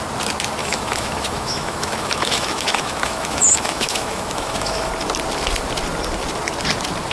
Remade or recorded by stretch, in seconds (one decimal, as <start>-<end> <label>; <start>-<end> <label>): 0.0-0.6 recorded; 0.6-4.9 remade; 4.9-7.1 recorded